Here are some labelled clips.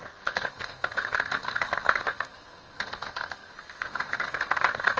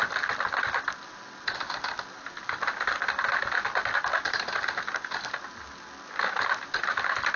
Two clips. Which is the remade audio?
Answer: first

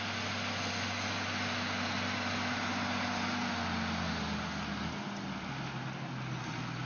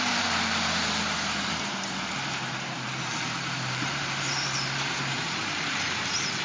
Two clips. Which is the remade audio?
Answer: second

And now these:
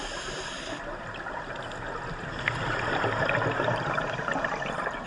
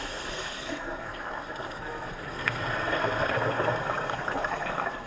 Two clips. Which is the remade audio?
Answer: second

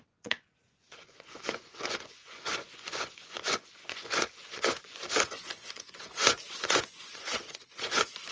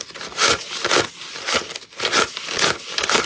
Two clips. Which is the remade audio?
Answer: first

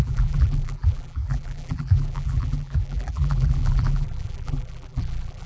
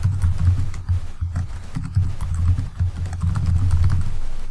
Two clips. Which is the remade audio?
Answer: first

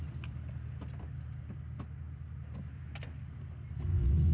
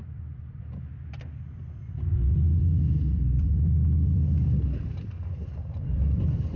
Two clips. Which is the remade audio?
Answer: second